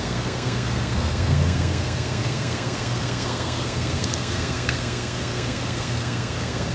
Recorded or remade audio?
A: remade